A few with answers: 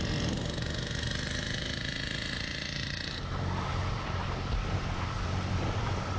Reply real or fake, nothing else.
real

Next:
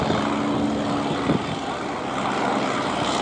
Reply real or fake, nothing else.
real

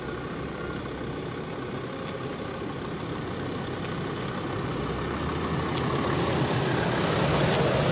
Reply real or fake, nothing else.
real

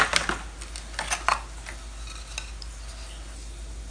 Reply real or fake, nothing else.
real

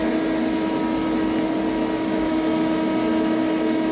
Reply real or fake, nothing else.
real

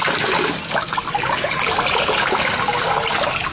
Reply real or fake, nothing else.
real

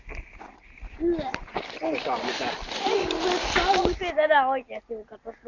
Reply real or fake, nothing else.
real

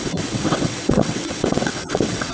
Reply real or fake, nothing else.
fake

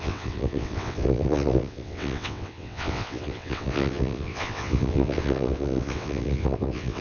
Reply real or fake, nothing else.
fake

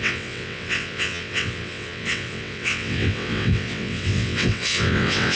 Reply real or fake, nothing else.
fake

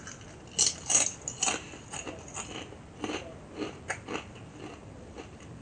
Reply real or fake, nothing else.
real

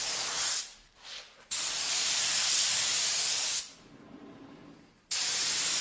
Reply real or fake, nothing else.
real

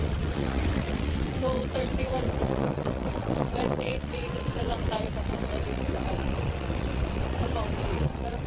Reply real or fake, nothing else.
fake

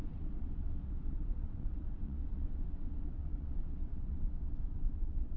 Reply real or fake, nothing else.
fake